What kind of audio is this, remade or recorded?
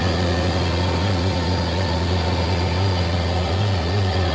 remade